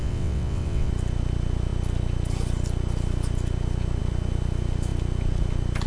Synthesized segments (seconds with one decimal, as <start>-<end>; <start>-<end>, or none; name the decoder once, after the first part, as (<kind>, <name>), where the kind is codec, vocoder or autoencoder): 0.0-0.9 (vocoder, WaveNeXt)